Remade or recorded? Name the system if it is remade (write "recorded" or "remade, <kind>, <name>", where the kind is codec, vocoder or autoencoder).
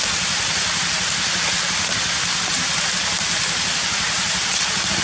recorded